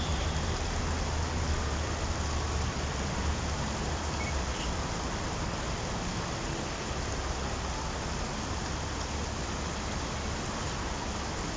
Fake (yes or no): no